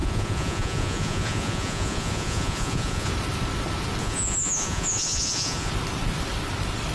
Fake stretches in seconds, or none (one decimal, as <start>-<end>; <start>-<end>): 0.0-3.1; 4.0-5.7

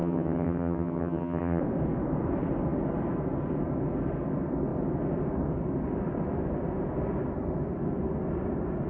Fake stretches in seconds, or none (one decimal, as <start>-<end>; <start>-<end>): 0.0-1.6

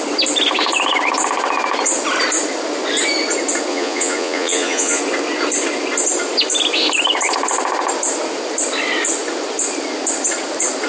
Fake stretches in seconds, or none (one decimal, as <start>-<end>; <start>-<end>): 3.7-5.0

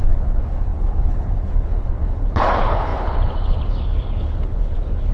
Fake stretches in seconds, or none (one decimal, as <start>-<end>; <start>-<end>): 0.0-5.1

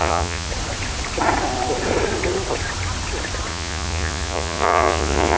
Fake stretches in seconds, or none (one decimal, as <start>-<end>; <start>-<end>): 0.0-0.5; 3.5-5.4

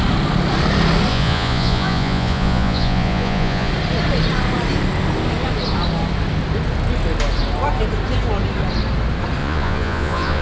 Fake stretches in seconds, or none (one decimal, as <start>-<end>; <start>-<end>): 1.1-3.7; 9.4-10.4